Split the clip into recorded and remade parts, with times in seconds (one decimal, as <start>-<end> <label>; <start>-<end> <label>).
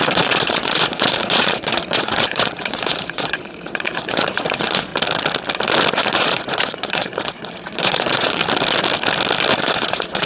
0.0-4.9 remade; 4.9-5.9 recorded; 5.9-8.4 remade; 8.4-9.6 recorded; 9.6-10.3 remade